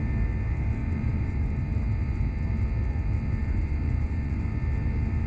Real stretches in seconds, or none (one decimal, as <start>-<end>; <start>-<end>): 0.0-0.8; 1.6-3.4; 4.4-5.3